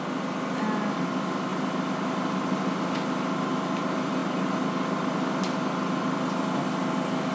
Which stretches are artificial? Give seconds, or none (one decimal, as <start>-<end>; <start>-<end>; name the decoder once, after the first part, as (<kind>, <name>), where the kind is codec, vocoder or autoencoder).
none

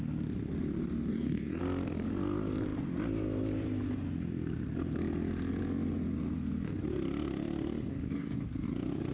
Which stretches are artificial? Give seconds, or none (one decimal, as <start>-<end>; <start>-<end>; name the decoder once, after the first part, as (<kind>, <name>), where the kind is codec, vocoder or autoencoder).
1.1-1.6 (codec, DAC); 7.9-8.4

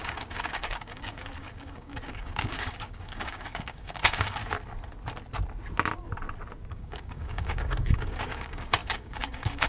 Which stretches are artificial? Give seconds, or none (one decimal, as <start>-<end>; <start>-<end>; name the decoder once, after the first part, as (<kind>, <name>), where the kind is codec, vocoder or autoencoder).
0.0-4.4 (codec, DAC); 6.7-9.7

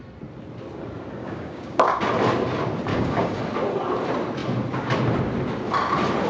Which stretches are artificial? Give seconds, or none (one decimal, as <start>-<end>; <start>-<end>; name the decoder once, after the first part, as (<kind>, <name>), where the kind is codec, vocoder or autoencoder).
1.2-2.0 (codec, DAC); 2.9-3.4